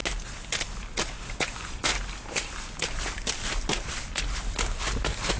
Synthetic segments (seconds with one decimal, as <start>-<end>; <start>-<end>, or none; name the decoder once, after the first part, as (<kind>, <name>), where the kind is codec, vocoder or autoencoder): 1.4-1.9 (vocoder, Vocos)